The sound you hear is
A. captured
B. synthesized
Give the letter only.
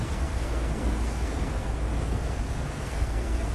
B